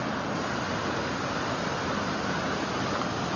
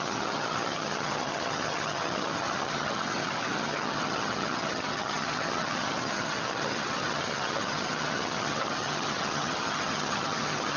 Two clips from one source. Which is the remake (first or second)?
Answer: second